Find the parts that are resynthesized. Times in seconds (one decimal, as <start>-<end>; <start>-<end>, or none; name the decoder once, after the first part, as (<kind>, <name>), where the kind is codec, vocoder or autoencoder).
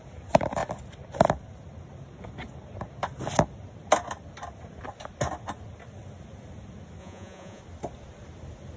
7.0-7.6 (vocoder, Vocos)